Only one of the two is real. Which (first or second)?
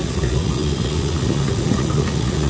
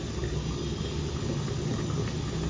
second